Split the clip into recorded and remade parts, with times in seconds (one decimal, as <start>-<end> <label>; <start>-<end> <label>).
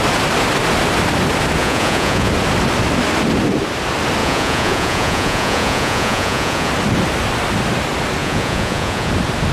0.0-1.6 recorded; 1.6-2.3 remade; 2.3-4.2 recorded; 4.2-6.7 remade; 6.7-8.2 recorded; 8.2-9.1 remade; 9.1-9.5 recorded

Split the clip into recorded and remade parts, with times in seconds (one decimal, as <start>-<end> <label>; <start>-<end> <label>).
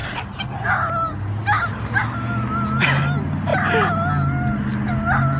0.0-5.4 recorded